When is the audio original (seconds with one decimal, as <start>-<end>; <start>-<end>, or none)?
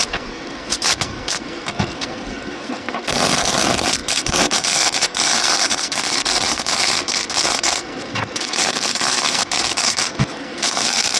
none